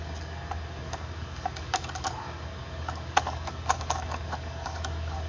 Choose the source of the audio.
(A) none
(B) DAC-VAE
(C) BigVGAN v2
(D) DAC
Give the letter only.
D